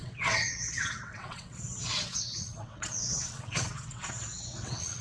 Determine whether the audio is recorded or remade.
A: remade